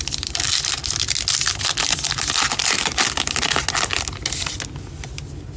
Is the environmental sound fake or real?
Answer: real